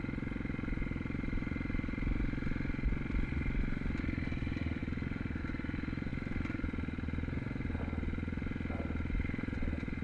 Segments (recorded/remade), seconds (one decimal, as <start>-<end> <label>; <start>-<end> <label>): 0.0-10.0 recorded